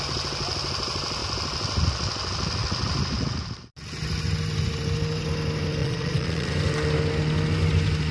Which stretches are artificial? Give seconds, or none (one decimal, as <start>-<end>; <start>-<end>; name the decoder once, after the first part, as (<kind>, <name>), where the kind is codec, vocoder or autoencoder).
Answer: 5.8-6.5 (vocoder, Vocos)